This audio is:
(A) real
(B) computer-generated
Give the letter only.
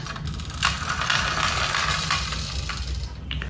A